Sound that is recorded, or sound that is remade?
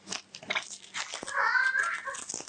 recorded